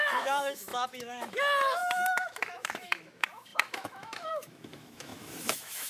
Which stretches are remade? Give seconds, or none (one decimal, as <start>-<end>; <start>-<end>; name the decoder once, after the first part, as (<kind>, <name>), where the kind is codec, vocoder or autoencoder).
0.0-5.9 (autoencoder, DAC-VAE)